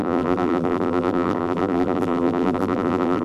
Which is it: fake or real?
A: fake